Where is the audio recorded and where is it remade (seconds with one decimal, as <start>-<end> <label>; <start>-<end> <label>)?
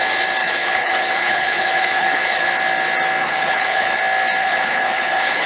0.0-0.4 recorded; 0.4-2.5 remade; 2.5-3.2 recorded; 3.2-4.0 remade; 4.0-4.4 recorded; 4.4-5.5 remade